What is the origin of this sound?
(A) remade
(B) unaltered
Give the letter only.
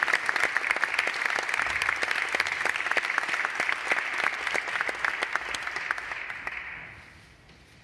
B